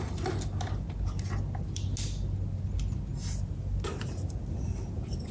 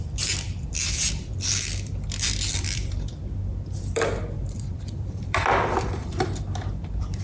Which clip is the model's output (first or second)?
second